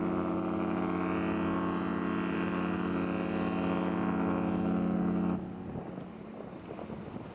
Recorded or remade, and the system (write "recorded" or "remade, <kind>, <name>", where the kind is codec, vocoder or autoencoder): recorded